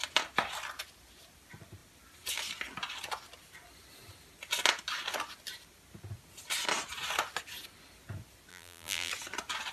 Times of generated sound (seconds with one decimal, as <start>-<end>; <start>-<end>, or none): 8.5-9.1